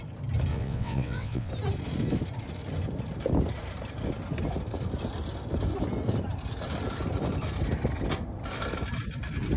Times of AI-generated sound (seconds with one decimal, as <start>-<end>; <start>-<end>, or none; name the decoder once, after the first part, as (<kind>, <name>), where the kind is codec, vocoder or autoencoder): 0.5-1.5 (vocoder, WaveNeXt)